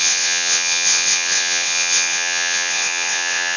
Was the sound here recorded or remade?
remade